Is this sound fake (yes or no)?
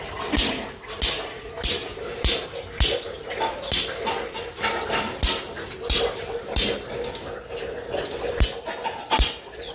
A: no